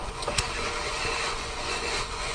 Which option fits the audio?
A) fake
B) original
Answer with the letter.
A